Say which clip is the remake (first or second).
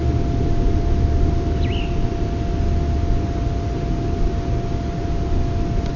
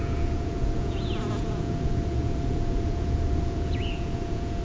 second